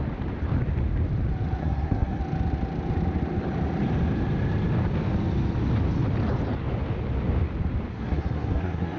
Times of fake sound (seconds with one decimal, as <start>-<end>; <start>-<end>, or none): 1.6-2.2; 7.9-9.0